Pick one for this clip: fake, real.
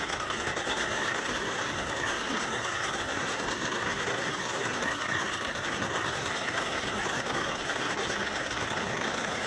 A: fake